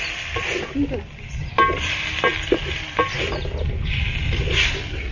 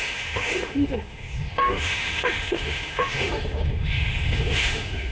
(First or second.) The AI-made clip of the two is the second